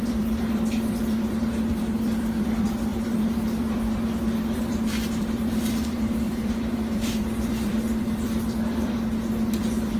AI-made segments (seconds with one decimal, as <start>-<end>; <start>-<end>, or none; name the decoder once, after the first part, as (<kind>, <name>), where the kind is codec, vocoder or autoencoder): 0.0-10.0 (vocoder, BigVGAN v2)

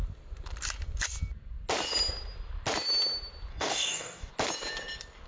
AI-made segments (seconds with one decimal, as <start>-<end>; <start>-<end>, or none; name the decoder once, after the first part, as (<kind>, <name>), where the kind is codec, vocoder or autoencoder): 3.5-4.3 (codec, DAC)

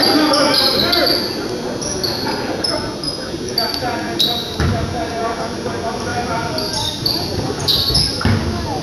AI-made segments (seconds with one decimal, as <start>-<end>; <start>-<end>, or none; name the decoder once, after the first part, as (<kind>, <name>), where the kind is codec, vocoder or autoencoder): 6.1-7.7 (vocoder, BigVGAN v2)

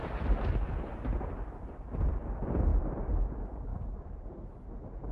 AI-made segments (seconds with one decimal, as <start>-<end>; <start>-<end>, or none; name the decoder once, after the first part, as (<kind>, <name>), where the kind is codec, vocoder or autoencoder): 3.7-4.3 (vocoder, BigVGAN v2)

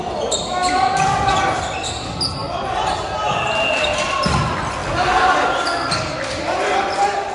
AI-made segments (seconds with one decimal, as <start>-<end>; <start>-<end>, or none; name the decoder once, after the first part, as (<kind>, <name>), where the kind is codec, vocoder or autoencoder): 0.6-1.9 (vocoder, BigVGAN v2); 2.4-3.3

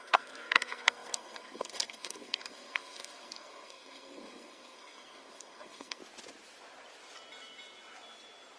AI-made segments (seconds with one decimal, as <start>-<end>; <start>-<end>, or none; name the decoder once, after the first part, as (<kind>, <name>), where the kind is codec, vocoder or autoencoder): 0.0-6.0 (codec, SNAC)

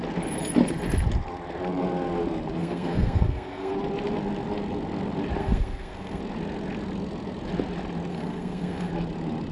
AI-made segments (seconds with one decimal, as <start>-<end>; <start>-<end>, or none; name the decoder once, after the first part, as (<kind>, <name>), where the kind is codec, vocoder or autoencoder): 2.6-3.7 (codec, SNAC); 5.4-6.2; 8.1-8.9

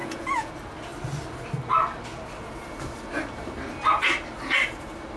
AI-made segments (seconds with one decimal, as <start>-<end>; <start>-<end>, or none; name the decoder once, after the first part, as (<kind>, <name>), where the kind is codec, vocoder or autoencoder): 0.0-0.5 (vocoder, Vocos)